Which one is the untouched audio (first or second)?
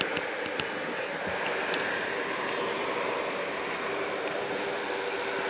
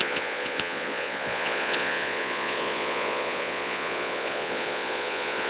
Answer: first